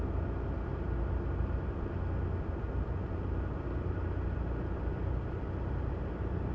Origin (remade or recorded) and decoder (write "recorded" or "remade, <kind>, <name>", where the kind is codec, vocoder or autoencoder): recorded